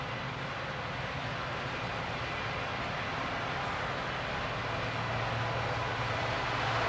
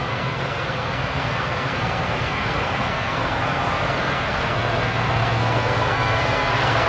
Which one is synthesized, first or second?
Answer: second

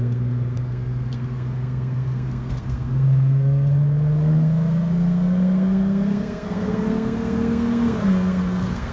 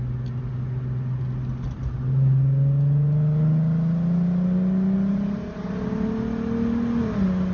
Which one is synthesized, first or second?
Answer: first